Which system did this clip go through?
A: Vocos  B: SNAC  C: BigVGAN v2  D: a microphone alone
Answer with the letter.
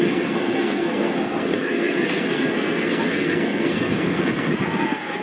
B